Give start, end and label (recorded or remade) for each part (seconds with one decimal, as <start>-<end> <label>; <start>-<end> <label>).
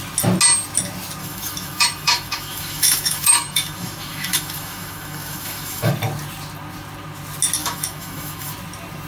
0.0-1.2 recorded; 1.2-5.9 remade; 5.9-7.6 recorded; 7.6-8.5 remade; 8.5-9.1 recorded